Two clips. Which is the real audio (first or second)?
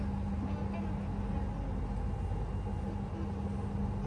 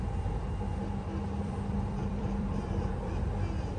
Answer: first